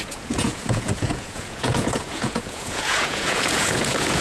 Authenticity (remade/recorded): remade